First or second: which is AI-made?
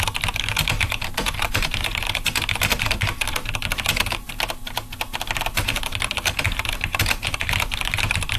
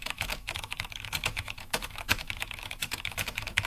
second